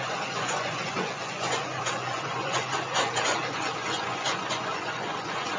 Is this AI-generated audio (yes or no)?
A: yes